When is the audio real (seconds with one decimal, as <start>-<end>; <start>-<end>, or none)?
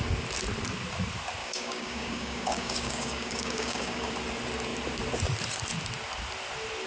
0.0-1.4; 4.1-6.9